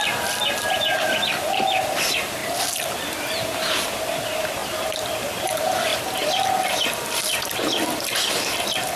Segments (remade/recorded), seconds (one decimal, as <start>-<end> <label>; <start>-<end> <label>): 0.0-2.4 remade; 2.4-3.0 recorded; 3.0-9.0 remade